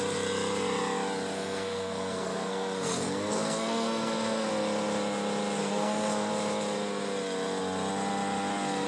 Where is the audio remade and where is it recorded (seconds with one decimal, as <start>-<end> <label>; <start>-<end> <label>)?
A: 0.0-1.3 recorded; 1.3-4.5 remade; 4.5-5.6 recorded; 5.6-6.3 remade; 6.3-8.9 recorded